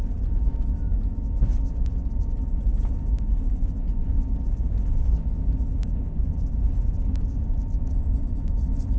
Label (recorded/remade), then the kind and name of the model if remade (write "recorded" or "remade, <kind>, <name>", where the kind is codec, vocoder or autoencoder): recorded